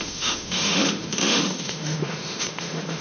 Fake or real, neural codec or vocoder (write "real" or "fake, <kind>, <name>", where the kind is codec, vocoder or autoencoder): fake, autoencoder, DAC-VAE